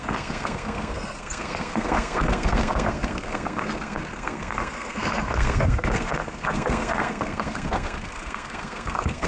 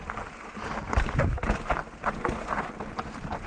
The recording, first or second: second